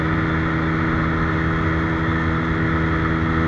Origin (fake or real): real